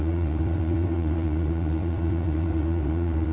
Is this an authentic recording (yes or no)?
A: no